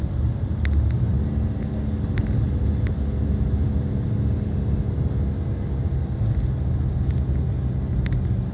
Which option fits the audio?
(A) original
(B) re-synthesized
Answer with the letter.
A